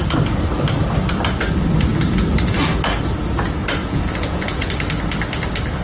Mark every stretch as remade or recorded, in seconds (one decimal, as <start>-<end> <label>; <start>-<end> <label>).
0.0-3.8 recorded; 3.8-4.7 remade; 4.7-5.8 recorded